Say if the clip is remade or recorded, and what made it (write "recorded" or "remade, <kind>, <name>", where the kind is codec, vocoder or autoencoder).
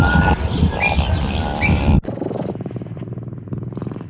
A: recorded